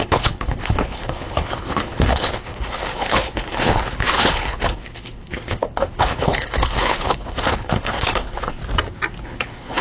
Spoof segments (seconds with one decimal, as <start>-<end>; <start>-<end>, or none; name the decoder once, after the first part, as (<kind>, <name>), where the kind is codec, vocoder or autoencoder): 0.0-8.6 (codec, HILCodec); 9.2-9.8